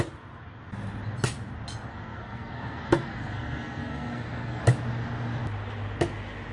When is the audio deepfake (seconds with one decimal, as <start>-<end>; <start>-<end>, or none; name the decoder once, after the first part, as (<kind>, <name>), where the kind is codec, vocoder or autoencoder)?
1.9-4.6 (codec, SNAC)